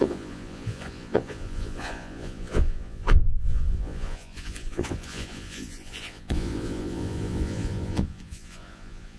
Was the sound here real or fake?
fake